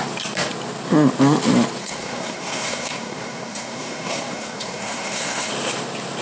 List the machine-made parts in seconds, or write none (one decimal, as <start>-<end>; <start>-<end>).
1.8-5.5